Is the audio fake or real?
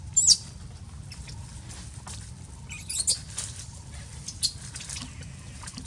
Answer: real